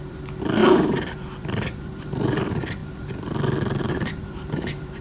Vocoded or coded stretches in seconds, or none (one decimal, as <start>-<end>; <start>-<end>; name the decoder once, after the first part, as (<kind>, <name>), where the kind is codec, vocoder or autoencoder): 0.0-5.0 (vocoder, BigVGAN v2)